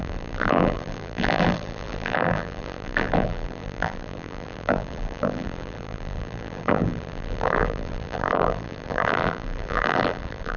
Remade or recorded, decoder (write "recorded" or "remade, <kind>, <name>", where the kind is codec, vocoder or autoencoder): remade, vocoder, BigVGAN v2